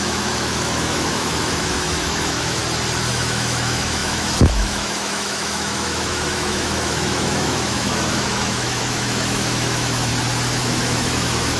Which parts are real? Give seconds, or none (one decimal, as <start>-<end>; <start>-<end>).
2.6-3.1; 10.1-10.6